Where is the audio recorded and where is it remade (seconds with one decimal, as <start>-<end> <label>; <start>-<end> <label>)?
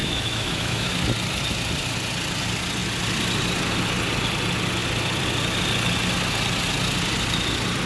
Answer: 0.0-0.9 remade; 0.9-7.9 recorded